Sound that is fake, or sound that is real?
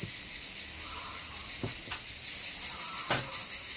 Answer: real